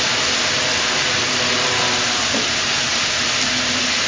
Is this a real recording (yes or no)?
yes